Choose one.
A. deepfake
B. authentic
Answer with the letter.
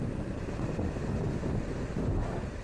B